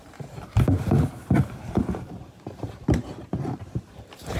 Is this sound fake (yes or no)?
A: yes